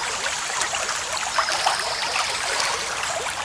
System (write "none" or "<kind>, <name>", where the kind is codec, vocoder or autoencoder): none